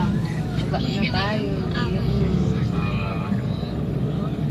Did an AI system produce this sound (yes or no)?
yes